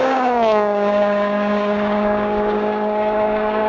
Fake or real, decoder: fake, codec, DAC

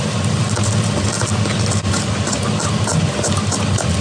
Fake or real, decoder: real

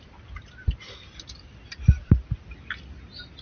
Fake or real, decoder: real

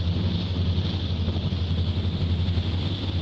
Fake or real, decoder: real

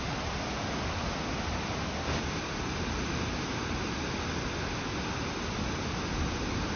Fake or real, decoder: real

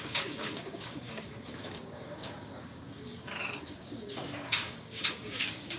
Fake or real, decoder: fake, codec, DAC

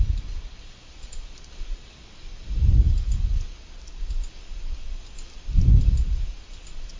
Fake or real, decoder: real